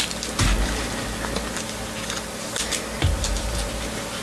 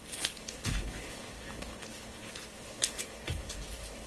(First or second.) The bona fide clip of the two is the first